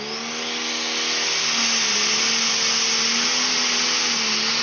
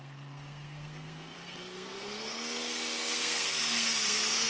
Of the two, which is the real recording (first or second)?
first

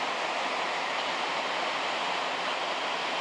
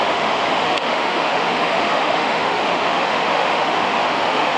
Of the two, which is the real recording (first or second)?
first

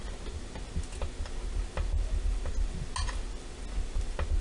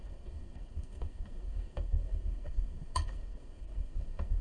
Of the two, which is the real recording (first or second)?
first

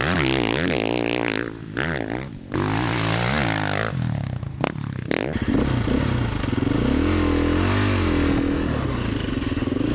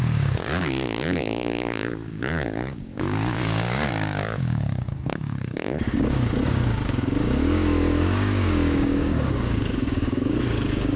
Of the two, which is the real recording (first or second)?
first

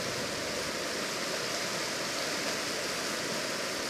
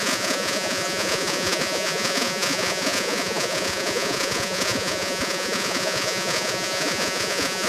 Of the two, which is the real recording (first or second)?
first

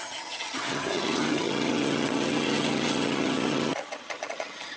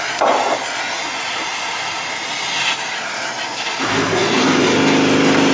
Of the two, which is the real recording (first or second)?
second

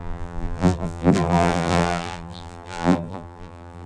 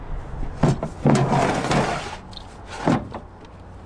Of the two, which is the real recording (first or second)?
second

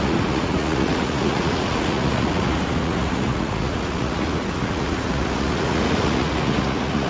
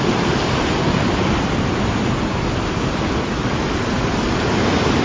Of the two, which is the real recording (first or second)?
second